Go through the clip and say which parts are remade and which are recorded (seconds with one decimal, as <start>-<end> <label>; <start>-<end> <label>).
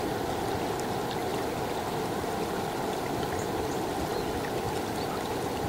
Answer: 0.0-5.7 recorded